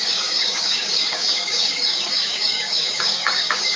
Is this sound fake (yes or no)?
yes